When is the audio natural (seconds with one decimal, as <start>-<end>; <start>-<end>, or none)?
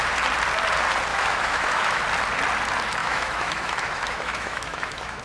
0.0-1.1; 2.0-3.0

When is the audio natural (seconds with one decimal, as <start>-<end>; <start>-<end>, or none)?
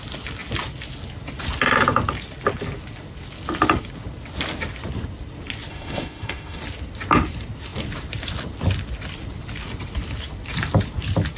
0.0-5.7; 6.6-11.4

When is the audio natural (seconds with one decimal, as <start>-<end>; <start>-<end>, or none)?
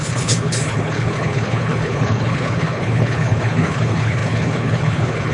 none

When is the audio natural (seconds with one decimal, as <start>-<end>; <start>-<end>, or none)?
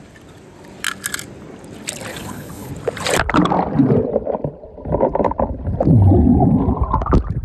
0.0-2.1; 2.7-7.4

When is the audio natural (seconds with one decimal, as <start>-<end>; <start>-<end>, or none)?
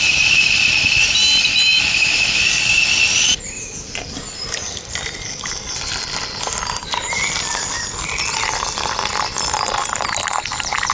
1.0-1.9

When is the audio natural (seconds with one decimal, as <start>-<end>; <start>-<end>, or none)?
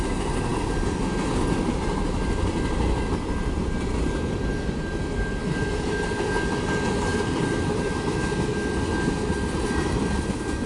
0.0-7.1; 8.0-10.7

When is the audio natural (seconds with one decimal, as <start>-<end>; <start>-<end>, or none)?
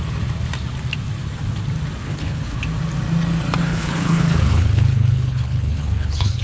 0.0-2.0; 2.6-3.6